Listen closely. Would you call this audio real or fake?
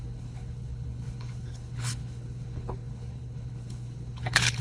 fake